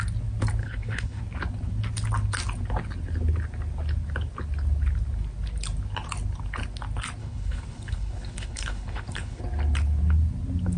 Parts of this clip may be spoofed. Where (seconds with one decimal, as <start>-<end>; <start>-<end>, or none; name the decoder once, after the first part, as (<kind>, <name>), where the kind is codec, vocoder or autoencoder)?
0.6-1.2 (codec, HILCodec); 7.2-9.4